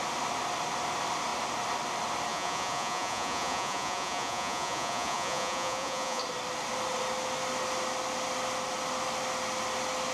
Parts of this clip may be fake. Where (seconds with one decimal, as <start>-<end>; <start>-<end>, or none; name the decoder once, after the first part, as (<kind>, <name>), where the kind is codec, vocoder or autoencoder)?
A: 2.3-6.2 (vocoder, Vocos)